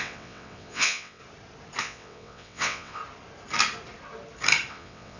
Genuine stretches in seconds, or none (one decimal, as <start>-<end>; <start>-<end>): 1.2-1.8; 3.0-4.7